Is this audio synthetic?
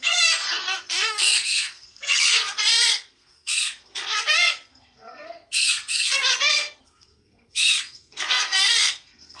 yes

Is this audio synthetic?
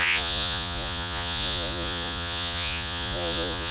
yes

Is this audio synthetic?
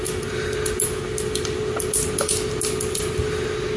no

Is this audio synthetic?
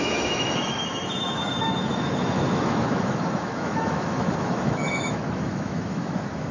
yes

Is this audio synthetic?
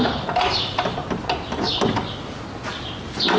no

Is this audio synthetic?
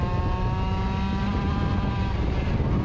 no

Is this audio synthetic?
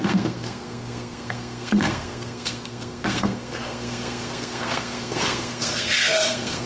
yes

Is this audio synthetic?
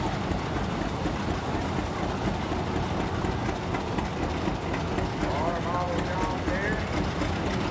no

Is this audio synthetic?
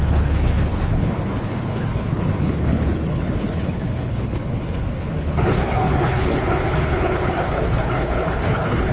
yes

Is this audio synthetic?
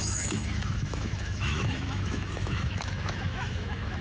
yes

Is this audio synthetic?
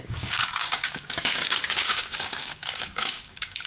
yes